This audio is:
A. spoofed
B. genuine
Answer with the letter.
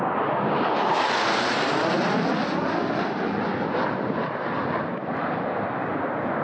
B